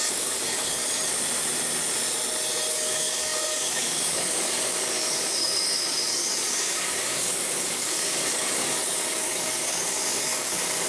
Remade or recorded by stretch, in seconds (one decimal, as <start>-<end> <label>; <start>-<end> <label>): 0.0-0.8 remade; 0.8-2.7 recorded; 2.7-10.9 remade